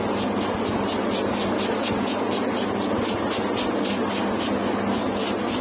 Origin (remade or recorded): recorded